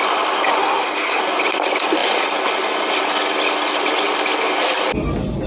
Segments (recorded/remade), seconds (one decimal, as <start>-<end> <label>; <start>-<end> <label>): 0.0-0.6 recorded; 0.6-1.2 remade; 1.2-5.5 recorded